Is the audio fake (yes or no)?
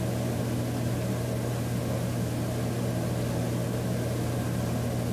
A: no